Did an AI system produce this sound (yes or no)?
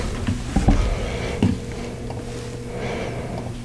no